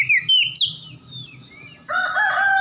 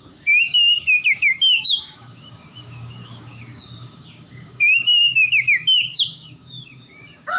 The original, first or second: first